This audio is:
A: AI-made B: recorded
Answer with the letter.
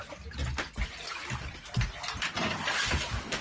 B